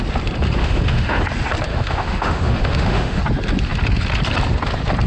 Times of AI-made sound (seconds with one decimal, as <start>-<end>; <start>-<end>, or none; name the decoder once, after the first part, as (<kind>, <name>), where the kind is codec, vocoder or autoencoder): 0.6-1.2 (autoencoder, DAC-VAE); 1.7-3.2